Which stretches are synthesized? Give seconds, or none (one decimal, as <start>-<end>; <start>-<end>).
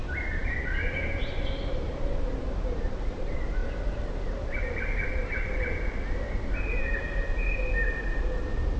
0.0-3.6